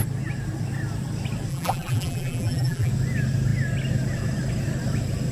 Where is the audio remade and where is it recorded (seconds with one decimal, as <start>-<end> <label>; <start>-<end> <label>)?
0.0-1.5 recorded; 1.5-2.9 remade; 2.9-5.3 recorded